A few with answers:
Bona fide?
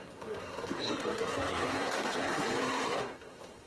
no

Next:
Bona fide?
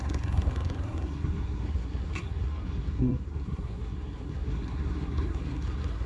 no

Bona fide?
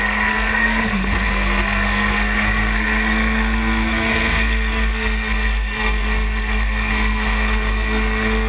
no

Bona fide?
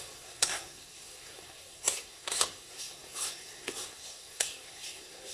no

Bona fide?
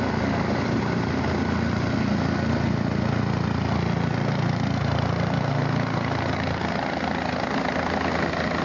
yes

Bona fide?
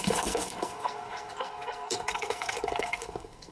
no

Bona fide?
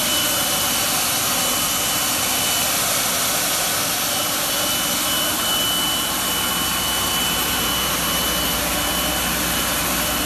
yes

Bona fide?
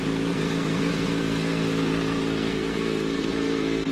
no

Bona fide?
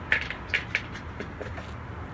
yes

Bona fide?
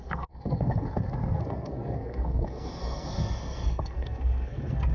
no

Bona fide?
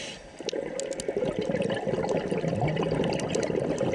yes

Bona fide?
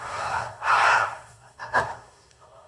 no